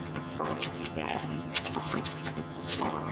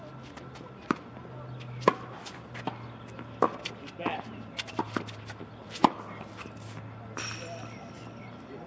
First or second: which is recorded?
second